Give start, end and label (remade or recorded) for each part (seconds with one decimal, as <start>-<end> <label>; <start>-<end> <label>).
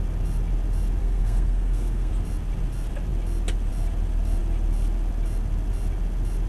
0.0-1.0 recorded; 1.0-2.1 remade; 2.1-6.5 recorded